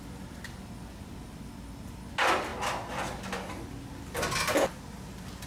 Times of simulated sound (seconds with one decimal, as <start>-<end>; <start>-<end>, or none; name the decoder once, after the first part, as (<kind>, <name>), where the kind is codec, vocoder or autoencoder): none